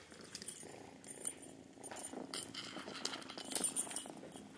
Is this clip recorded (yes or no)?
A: yes